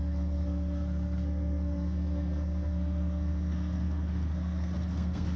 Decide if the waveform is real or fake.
fake